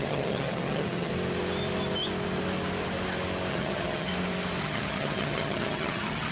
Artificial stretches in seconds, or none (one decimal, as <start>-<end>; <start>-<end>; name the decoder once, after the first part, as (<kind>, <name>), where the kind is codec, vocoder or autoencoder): 0.0-1.1 (vocoder, HiFi-GAN); 3.5-4.1; 4.6-6.3